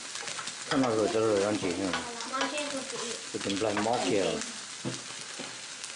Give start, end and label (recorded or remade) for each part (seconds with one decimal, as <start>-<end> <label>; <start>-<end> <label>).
0.0-6.0 recorded